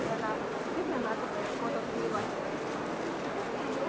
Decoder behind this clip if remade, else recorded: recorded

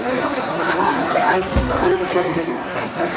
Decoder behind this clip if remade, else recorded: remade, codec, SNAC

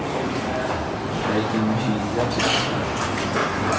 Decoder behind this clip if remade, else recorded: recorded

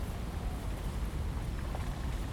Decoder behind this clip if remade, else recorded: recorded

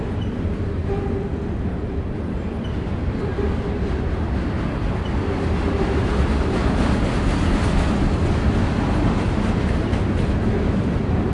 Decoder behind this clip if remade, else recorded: recorded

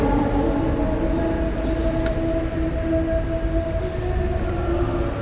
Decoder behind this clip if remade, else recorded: recorded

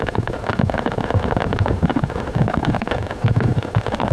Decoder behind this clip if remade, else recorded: remade, autoencoder, DAC-VAE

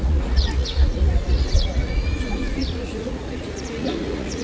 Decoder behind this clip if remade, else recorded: remade, vocoder, Vocos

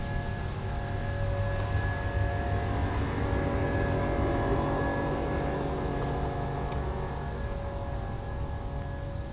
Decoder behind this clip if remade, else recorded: recorded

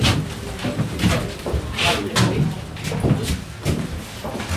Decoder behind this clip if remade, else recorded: recorded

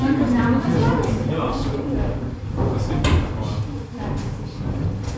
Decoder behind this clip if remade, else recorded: recorded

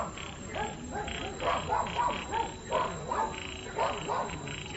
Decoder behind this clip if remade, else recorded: recorded